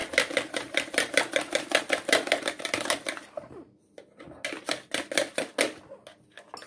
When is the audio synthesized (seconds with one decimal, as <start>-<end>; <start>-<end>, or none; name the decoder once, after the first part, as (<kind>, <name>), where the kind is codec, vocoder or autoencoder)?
0.0-4.0 (vocoder, BigVGAN v2)